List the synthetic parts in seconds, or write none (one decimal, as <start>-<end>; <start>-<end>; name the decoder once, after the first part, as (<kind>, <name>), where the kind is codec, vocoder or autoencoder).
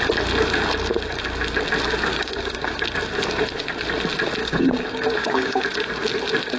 2.1-2.8 (codec, DAC); 4.4-5.6